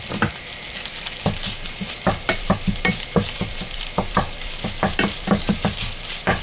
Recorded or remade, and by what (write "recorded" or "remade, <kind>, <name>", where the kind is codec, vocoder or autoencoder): remade, vocoder, BigVGAN v2